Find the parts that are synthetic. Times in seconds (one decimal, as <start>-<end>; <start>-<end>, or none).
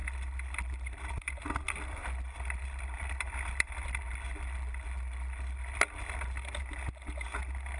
none